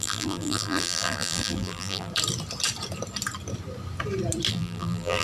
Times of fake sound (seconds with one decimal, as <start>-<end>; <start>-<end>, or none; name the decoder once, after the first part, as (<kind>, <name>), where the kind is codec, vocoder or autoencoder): 0.0-2.1 (vocoder, BigVGAN v2); 4.5-5.2